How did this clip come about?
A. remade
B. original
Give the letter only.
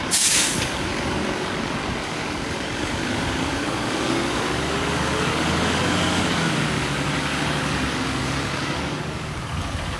A